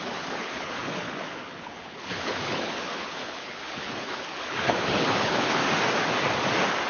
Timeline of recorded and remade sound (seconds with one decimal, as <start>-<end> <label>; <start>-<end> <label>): 0.0-5.6 remade; 5.6-6.9 recorded